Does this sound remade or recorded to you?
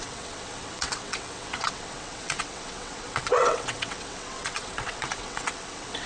remade